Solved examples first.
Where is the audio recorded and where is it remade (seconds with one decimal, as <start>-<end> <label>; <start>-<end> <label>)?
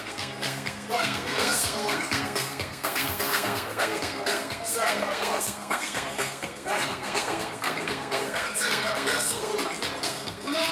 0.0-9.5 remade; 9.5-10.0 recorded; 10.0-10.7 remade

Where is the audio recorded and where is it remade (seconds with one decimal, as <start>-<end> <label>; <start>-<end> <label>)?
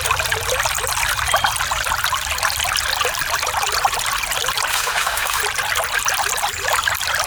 0.0-4.7 recorded; 4.7-5.4 remade; 5.4-7.3 recorded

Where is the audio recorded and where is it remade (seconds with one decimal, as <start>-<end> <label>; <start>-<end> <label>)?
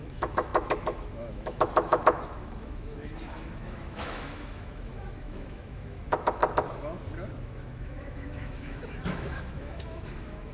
0.0-6.4 remade; 6.4-7.4 recorded; 7.4-10.5 remade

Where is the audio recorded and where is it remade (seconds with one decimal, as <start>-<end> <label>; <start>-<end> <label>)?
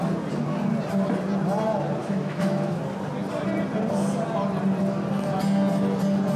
0.0-2.0 recorded; 2.0-2.8 remade; 2.8-6.4 recorded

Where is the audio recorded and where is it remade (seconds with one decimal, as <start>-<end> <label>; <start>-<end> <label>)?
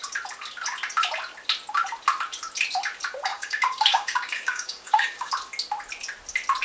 0.0-3.3 recorded; 3.3-5.3 remade; 5.3-6.6 recorded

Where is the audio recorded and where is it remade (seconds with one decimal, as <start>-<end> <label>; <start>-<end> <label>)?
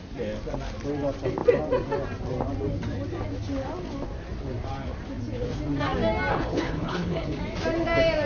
0.0-6.3 recorded; 6.3-7.4 remade; 7.4-8.3 recorded